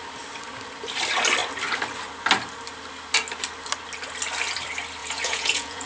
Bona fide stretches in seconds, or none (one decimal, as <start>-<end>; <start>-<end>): 0.0-5.0

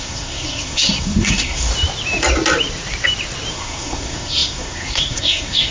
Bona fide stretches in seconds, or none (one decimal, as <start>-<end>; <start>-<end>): 1.7-3.5

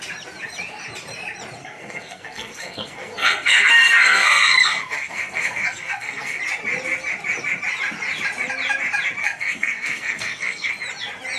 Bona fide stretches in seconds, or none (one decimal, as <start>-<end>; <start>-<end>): 0.0-1.6; 6.4-9.2; 10.7-11.4